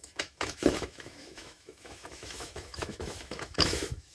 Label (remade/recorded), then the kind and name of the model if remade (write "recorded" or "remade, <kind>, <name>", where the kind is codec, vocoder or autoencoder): remade, autoencoder, DAC-VAE